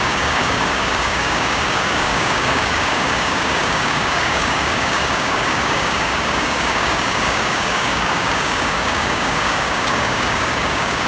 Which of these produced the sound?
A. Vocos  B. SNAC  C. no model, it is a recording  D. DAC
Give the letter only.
D